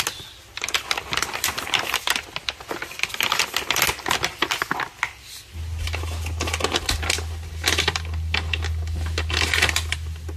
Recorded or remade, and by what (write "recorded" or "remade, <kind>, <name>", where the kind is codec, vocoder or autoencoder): recorded